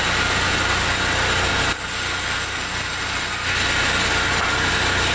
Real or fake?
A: real